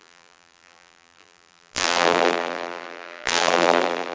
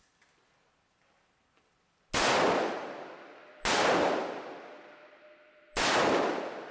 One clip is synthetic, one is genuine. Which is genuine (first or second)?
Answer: second